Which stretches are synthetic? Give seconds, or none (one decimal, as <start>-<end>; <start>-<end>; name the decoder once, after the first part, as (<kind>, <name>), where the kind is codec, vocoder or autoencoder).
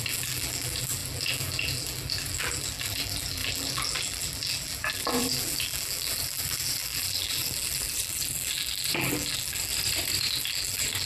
0.0-9.7 (vocoder, BigVGAN v2); 10.3-11.1